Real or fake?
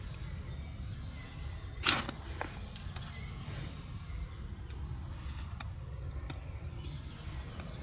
real